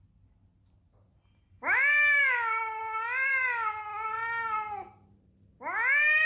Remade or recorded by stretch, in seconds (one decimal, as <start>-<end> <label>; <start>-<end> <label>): 0.0-6.3 recorded